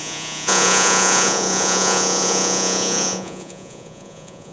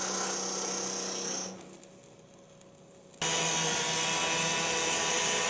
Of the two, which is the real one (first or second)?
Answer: second